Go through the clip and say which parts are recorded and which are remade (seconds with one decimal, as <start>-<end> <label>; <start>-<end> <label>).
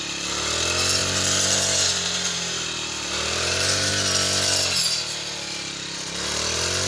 0.0-1.0 recorded; 1.0-3.9 remade; 3.9-6.9 recorded